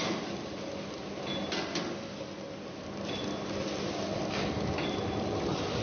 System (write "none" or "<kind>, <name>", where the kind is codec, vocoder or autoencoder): none